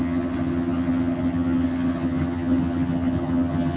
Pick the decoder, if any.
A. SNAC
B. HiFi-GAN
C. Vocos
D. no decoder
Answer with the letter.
B